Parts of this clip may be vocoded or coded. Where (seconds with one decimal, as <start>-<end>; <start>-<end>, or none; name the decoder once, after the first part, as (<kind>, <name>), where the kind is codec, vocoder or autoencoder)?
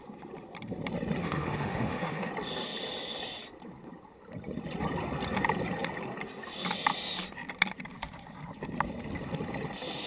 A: 1.2-2.3 (autoencoder, DAC-VAE)